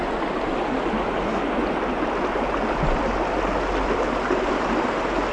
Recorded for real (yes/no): yes